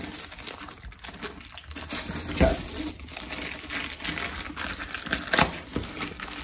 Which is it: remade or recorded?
recorded